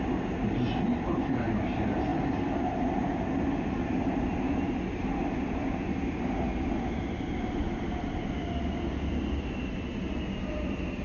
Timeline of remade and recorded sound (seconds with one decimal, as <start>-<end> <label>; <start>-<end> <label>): 0.0-2.1 recorded; 2.1-2.6 remade; 2.6-3.0 recorded; 3.0-5.1 remade; 5.1-7.3 recorded; 7.3-8.3 remade; 8.3-11.0 recorded